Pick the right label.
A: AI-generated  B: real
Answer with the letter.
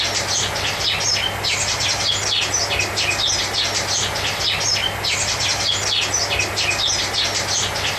B